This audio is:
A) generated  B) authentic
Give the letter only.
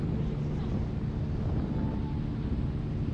B